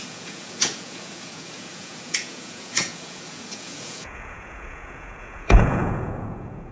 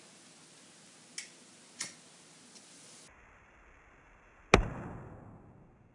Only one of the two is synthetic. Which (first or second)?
first